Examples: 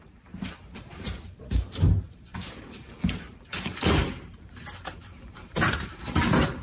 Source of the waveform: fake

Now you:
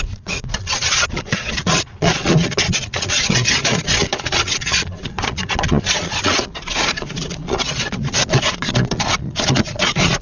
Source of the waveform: fake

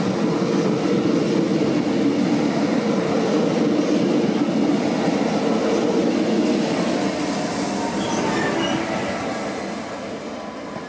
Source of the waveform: real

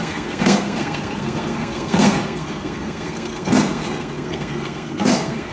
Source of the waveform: fake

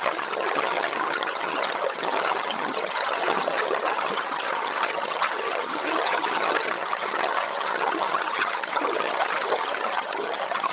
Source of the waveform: fake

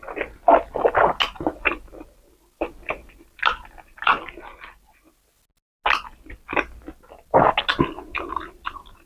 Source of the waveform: real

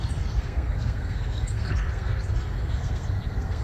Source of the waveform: fake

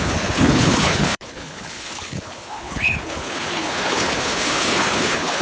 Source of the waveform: fake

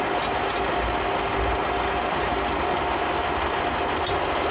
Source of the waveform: real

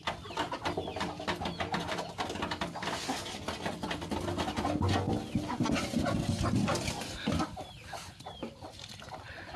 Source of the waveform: real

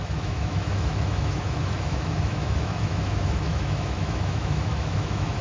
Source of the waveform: fake